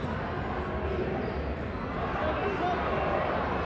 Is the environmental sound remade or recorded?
recorded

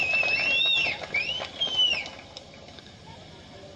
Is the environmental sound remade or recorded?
recorded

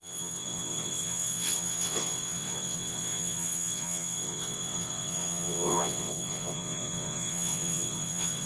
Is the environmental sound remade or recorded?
remade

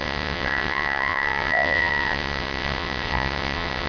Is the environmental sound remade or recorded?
remade